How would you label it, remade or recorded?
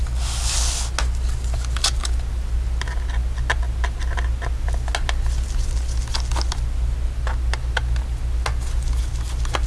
recorded